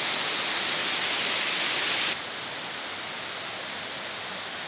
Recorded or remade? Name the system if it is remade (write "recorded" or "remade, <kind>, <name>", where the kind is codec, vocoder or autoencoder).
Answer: recorded